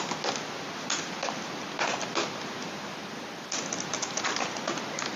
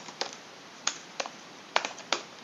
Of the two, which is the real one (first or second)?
first